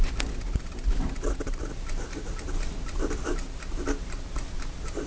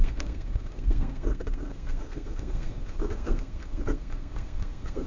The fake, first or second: second